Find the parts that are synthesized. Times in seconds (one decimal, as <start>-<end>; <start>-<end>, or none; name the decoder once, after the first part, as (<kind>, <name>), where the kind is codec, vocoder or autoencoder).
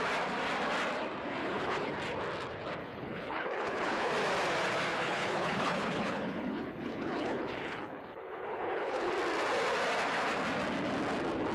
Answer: 1.4-1.9 (codec, HILCodec); 2.8-4.1; 4.9-9.1